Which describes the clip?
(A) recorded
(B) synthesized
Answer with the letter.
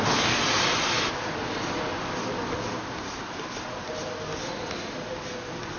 A